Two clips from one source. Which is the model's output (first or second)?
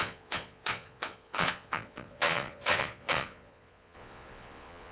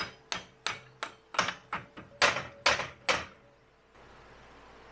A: first